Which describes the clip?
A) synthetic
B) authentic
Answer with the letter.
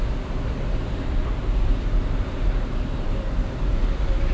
A